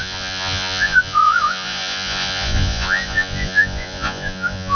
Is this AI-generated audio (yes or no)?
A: yes